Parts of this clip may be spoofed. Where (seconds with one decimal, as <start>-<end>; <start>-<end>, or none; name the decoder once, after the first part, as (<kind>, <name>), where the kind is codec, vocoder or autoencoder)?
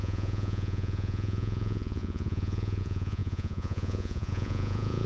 0.0-5.1 (vocoder, Vocos)